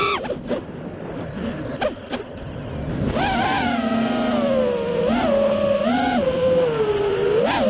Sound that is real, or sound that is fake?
real